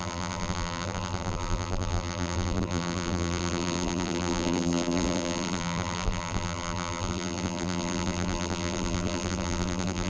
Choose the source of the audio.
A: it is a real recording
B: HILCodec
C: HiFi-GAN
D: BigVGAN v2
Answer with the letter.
D